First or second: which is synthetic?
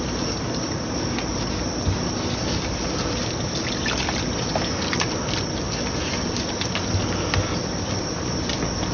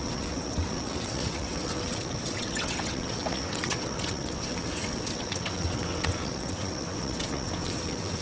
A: second